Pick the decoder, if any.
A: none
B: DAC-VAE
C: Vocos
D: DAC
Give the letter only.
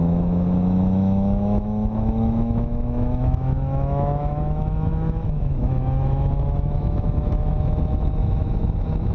B